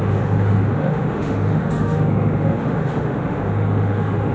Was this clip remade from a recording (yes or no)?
yes